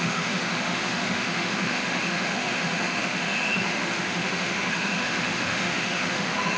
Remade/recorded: remade